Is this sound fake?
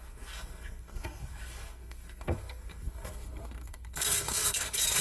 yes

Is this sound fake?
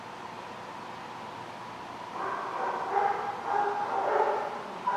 no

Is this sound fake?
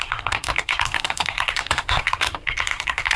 yes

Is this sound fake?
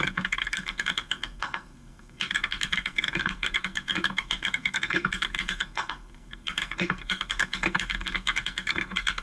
yes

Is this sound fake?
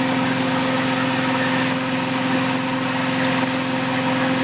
no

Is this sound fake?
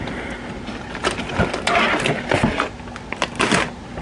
no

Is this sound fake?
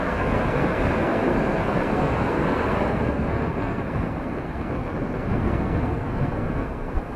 yes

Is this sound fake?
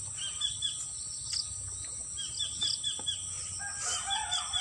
no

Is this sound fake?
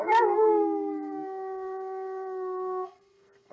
yes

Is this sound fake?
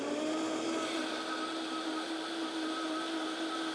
no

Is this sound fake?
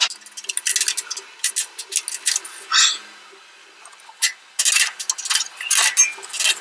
no